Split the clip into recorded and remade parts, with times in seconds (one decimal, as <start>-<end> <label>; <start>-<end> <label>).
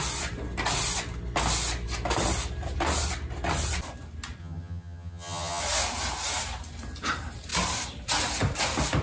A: 0.0-4.4 recorded; 4.4-5.6 remade; 5.6-9.0 recorded